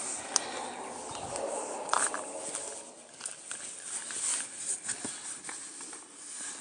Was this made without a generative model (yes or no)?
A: yes